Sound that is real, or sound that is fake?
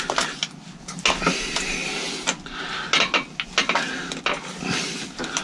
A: real